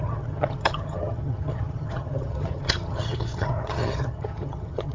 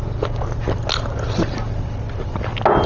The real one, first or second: second